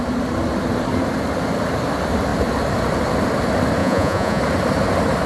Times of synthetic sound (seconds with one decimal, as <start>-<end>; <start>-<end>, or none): 3.8-4.4